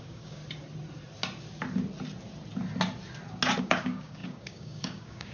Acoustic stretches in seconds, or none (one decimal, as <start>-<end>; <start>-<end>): 0.4-3.6